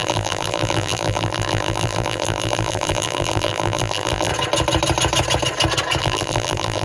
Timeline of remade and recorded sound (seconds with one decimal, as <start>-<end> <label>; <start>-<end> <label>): 0.0-4.3 remade; 4.3-6.0 recorded; 6.0-6.8 remade